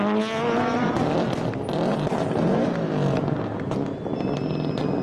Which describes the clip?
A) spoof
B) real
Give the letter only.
B